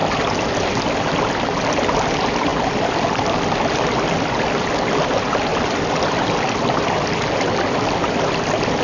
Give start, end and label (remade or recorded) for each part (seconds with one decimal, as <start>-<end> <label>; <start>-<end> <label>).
0.0-2.5 recorded; 2.5-3.5 remade; 3.5-5.5 recorded; 5.5-6.1 remade; 6.1-8.8 recorded